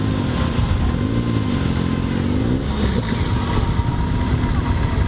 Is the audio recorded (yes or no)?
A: yes